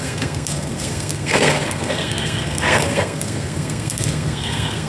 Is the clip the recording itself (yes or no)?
no